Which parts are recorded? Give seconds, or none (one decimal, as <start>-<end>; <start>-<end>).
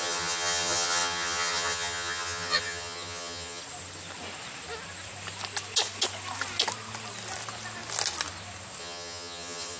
3.6-8.8